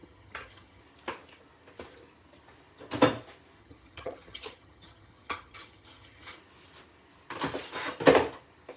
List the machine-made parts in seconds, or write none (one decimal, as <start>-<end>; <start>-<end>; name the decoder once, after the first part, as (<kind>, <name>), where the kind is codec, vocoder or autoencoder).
0.0-0.8 (vocoder, HiFi-GAN); 3.6-6.4